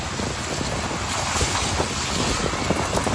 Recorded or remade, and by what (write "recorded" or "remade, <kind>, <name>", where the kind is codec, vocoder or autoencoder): recorded